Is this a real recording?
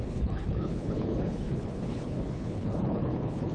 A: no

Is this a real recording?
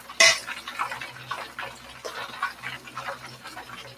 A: yes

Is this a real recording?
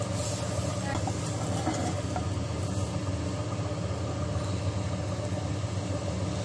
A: yes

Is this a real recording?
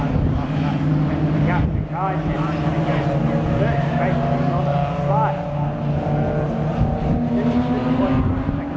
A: yes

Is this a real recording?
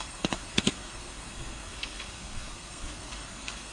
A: no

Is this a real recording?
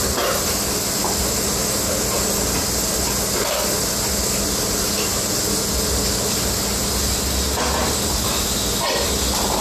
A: yes